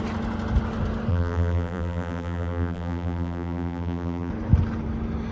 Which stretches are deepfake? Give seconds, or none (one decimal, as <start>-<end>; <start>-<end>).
1.1-4.3